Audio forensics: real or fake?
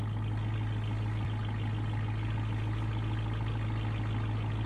real